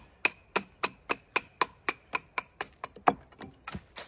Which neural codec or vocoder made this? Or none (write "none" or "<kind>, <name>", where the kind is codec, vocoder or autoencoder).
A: none